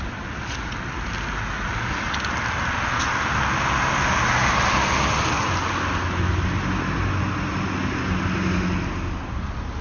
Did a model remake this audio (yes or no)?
no